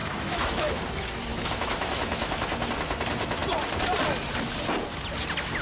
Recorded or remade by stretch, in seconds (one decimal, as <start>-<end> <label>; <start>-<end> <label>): 0.0-0.8 remade; 0.8-1.3 recorded; 1.3-2.7 remade; 2.7-5.6 recorded